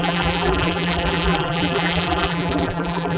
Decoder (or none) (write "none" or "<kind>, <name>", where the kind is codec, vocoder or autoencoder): vocoder, BigVGAN v2